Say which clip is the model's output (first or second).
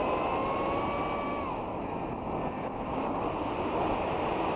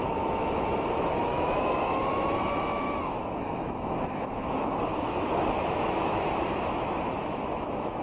second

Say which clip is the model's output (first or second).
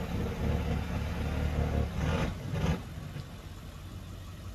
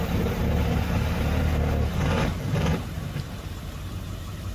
second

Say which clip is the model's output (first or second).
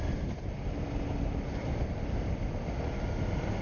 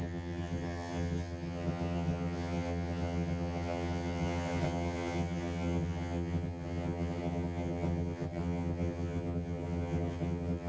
second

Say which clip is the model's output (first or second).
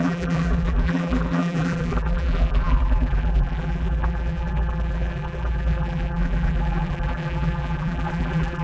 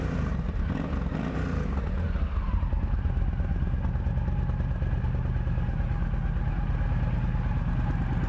first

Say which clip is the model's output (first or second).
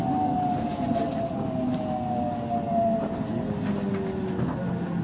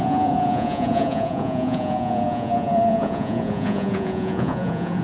second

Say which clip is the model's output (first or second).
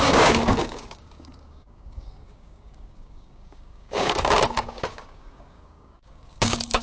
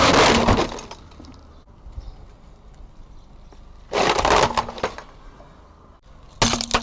first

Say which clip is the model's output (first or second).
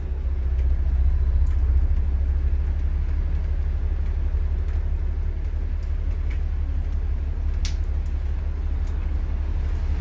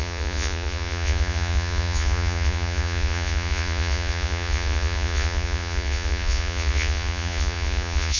second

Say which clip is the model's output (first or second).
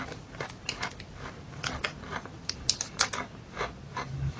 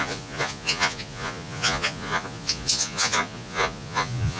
second